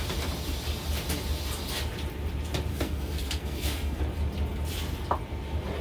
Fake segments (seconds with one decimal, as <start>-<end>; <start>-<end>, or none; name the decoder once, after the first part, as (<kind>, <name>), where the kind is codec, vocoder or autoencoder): 2.7-4.0 (codec, SNAC)